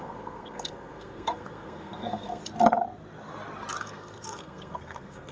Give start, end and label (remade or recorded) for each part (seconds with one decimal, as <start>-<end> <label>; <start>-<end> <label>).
0.0-2.4 remade; 2.4-3.8 recorded; 3.8-5.3 remade